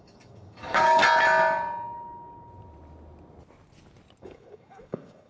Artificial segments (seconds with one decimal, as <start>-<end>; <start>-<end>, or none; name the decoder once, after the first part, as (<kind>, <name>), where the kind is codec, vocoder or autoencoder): 0.0-1.0 (codec, DAC); 4.2-5.3